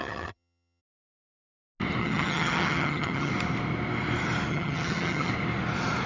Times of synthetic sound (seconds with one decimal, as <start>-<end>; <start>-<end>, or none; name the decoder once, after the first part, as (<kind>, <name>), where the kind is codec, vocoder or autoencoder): 0.0-0.8 (vocoder, HiFi-GAN); 2.0-3.3; 4.5-5.3